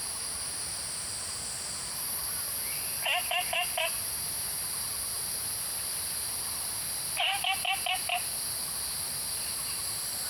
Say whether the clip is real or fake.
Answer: real